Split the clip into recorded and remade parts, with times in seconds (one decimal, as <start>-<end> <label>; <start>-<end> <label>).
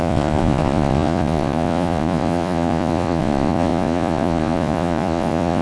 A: 0.0-5.6 remade